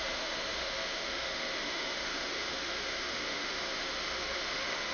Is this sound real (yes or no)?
no